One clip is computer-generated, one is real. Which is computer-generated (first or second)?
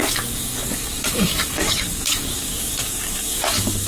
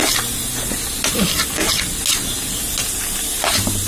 first